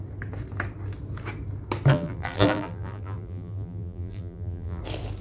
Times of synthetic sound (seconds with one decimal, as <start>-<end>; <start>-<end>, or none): 1.9-4.8